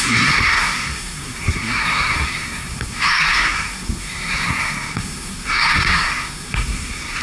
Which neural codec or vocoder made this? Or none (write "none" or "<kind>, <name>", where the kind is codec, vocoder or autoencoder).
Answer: codec, SNAC